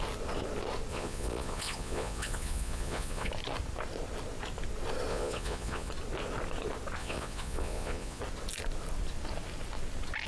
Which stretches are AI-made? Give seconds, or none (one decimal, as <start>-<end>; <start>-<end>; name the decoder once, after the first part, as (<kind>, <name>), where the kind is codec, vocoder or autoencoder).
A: 0.9-3.3 (vocoder, Vocos); 5.1-5.9; 7.0-8.2